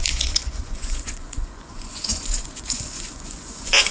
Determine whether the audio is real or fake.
fake